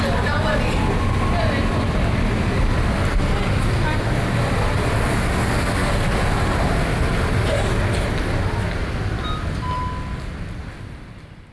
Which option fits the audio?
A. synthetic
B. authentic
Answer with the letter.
B